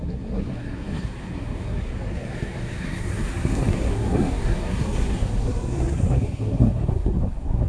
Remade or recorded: remade